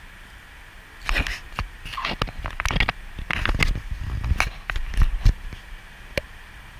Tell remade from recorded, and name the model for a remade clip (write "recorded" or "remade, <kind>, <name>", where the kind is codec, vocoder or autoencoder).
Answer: recorded